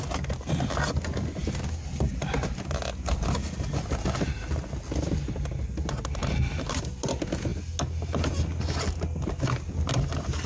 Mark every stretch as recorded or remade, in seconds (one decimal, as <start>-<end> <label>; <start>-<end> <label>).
0.0-6.2 recorded; 6.2-6.9 remade; 6.9-10.5 recorded